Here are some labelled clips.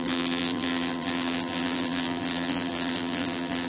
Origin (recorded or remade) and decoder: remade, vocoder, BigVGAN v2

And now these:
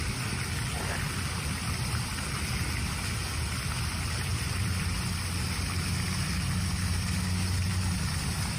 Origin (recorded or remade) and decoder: recorded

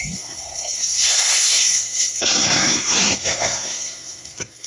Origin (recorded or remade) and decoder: remade, codec, SNAC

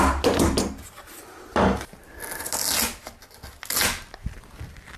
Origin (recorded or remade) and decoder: recorded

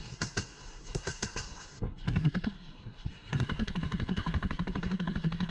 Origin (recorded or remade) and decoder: remade, codec, SNAC